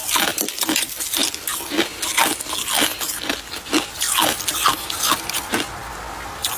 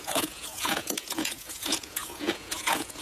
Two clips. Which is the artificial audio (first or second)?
second